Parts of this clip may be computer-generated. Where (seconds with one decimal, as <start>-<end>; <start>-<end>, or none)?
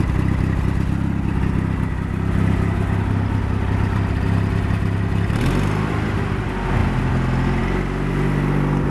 none